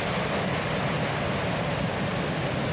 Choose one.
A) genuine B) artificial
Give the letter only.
A